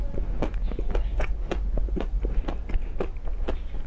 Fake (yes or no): no